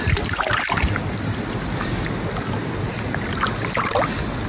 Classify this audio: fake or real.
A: real